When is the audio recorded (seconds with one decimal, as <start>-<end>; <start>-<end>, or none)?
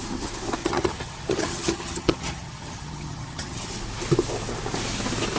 0.0-0.6; 3.8-5.4